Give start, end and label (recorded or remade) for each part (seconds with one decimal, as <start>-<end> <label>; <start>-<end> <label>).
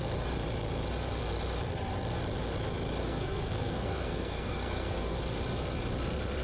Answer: 0.0-3.0 recorded; 3.0-5.2 remade; 5.2-6.4 recorded